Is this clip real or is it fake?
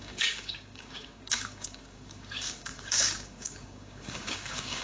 fake